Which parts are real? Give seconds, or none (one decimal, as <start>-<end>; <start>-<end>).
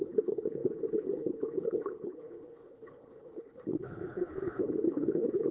none